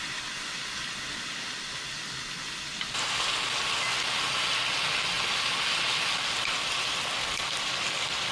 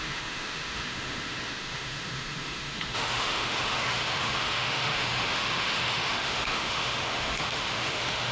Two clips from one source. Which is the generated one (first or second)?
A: second